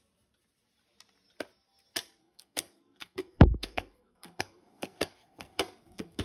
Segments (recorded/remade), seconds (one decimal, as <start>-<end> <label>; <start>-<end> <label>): 0.0-2.2 recorded; 2.2-6.2 remade